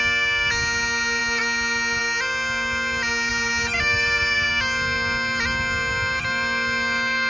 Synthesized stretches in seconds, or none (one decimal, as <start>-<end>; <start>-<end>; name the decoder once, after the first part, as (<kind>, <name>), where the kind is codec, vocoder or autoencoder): 3.3-4.5 (vocoder, BigVGAN v2)